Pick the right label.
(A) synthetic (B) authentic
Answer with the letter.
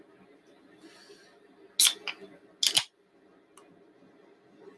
B